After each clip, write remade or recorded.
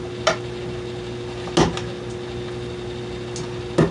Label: recorded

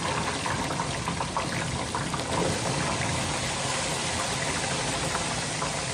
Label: recorded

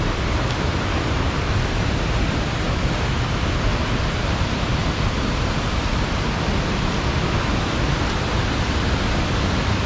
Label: recorded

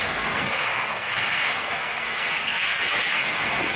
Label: remade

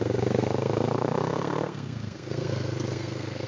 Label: remade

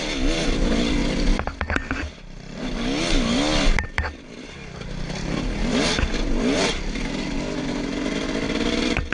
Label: recorded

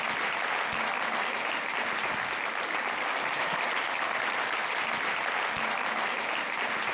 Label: recorded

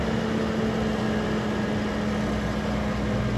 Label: recorded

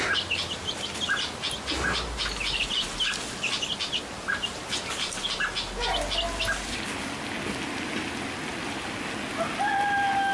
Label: recorded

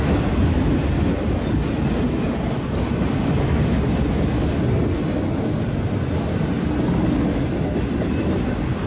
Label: recorded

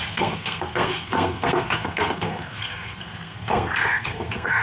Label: remade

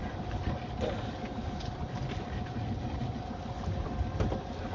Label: recorded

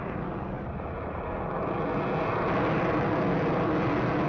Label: recorded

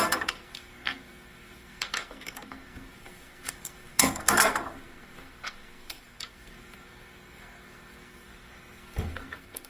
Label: remade